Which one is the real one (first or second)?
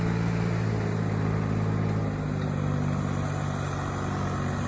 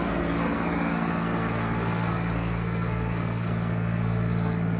first